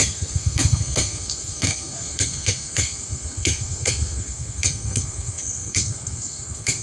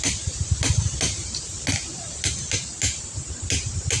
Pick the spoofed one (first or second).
first